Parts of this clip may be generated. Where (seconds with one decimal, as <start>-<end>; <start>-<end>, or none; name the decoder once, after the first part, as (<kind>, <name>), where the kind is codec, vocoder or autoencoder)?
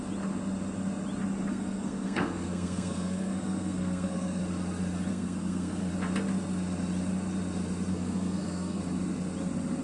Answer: 1.5-4.4 (codec, SNAC); 5.1-5.9; 7.9-8.8